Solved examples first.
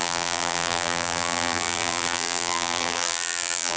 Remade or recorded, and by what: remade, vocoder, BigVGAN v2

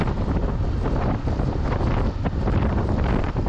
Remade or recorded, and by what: recorded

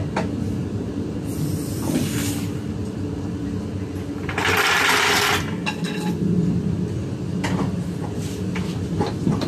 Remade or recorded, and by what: recorded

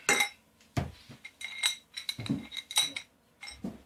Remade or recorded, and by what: recorded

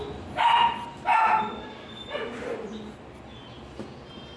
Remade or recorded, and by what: recorded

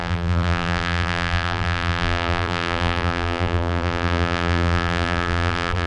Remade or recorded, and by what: remade, vocoder, BigVGAN v2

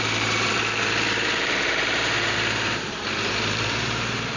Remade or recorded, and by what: remade, vocoder, BigVGAN v2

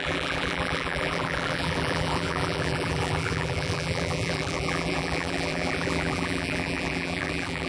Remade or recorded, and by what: remade, vocoder, BigVGAN v2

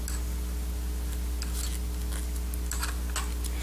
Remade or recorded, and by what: recorded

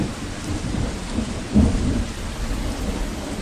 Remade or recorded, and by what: remade, vocoder, BigVGAN v2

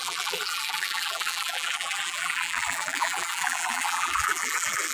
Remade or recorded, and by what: remade, vocoder, BigVGAN v2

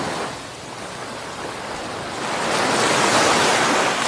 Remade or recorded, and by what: recorded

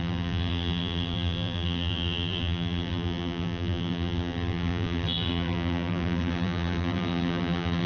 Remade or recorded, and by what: remade, vocoder, BigVGAN v2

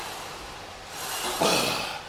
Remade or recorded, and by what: recorded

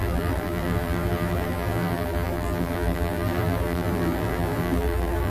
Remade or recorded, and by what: remade, vocoder, BigVGAN v2